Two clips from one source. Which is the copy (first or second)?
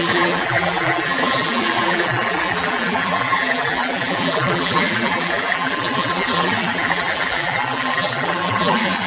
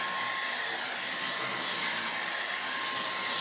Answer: first